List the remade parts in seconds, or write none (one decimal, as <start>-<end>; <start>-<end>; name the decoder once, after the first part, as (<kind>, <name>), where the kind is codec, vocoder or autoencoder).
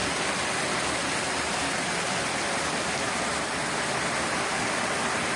none